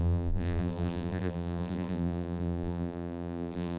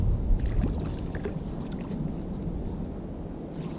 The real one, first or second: second